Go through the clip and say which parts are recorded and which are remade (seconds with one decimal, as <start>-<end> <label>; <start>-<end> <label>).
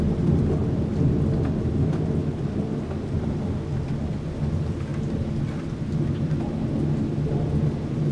0.0-8.1 recorded